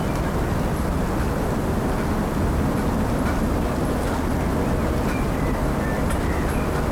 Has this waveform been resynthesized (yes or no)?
no